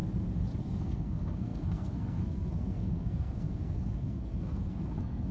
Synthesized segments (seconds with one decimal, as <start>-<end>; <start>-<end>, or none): 0.6-5.3